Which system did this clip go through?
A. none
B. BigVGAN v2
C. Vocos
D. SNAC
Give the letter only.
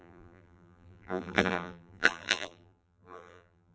B